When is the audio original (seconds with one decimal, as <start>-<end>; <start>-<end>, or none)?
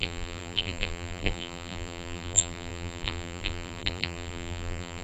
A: none